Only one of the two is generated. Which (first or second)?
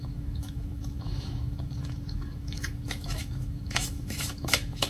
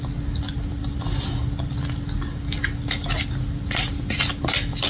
first